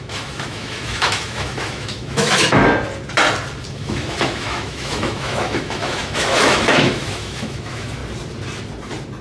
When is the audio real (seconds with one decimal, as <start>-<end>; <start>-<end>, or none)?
2.6-3.7; 8.0-9.2